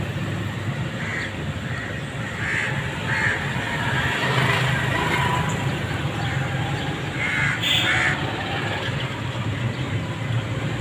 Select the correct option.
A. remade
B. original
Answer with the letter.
B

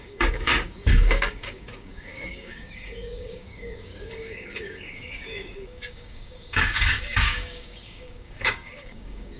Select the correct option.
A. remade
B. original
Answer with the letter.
A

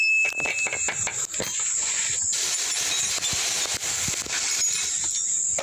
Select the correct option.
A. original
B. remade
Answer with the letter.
A